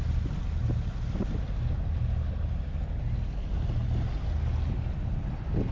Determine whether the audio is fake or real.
real